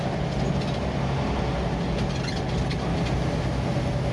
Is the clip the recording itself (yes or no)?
yes